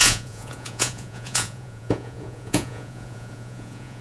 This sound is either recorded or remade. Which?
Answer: remade